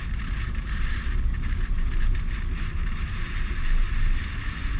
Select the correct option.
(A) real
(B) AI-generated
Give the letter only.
B